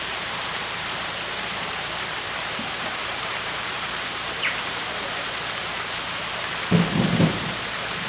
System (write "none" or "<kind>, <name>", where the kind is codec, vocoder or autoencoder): vocoder, BigVGAN v2